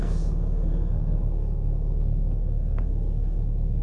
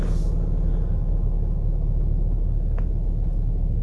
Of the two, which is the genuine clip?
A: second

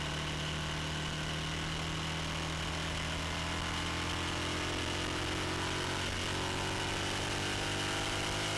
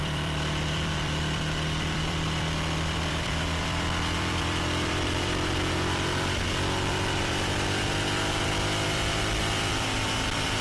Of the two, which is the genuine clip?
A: first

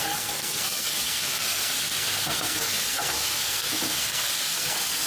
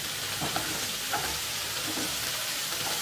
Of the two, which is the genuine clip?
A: second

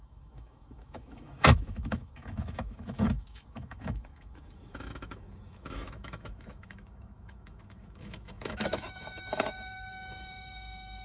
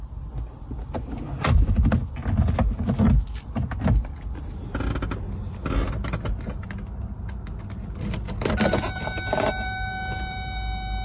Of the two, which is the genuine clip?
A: second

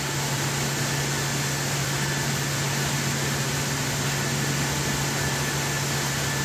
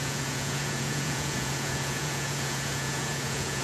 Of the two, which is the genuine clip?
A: first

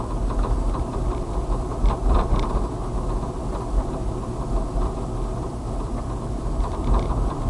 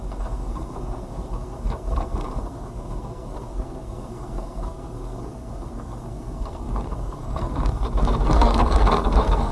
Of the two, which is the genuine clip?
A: first